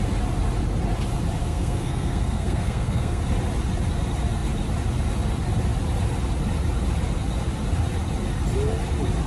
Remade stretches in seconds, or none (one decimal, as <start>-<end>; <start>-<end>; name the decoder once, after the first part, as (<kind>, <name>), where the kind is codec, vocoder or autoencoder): 1.4-3.2 (codec, SNAC)